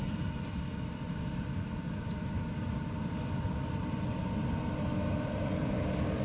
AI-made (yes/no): no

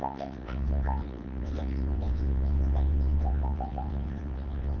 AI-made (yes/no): yes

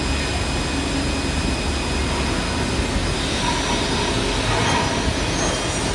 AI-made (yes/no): no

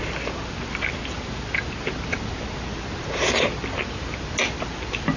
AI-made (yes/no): no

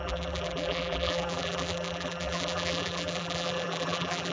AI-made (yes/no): yes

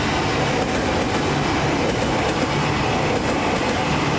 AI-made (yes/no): no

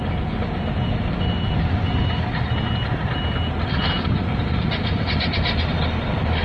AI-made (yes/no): no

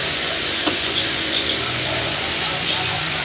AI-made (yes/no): yes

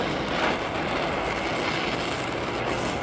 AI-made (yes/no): no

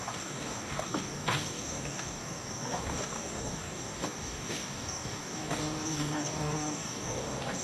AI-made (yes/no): yes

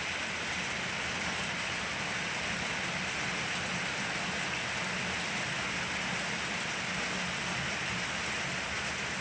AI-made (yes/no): no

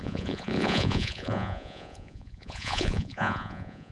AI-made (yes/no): yes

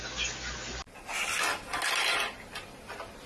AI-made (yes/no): no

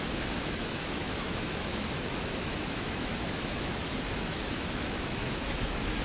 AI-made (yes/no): yes